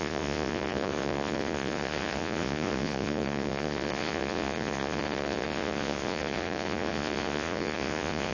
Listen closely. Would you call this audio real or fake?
fake